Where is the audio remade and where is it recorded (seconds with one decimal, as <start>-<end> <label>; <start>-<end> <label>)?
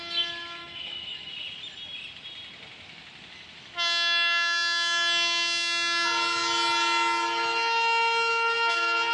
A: 0.0-0.6 recorded; 0.6-1.3 remade; 1.3-9.1 recorded